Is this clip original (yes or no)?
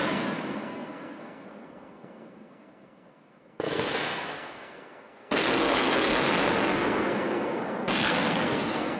no